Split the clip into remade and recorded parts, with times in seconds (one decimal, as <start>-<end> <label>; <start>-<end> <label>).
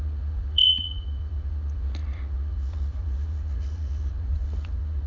0.0-5.1 remade